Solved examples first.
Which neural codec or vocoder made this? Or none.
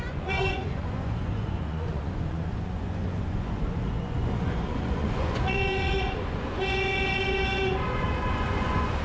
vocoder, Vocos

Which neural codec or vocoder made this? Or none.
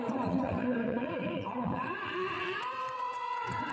vocoder, WaveNeXt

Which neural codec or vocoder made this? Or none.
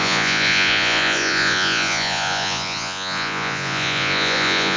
vocoder, Vocos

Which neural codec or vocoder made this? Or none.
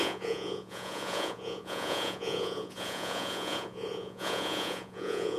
vocoder, Vocos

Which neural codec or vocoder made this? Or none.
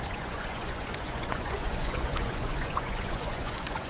vocoder, Vocos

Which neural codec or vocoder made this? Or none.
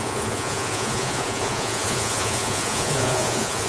vocoder, Vocos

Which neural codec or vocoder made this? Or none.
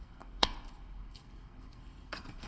codec, SNAC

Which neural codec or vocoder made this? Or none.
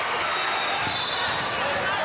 none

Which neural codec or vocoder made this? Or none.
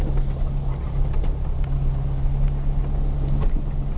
none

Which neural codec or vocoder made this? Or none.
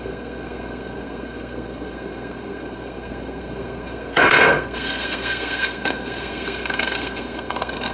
codec, SNAC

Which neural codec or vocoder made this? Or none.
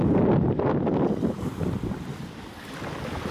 none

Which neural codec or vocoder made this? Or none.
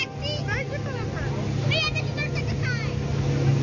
none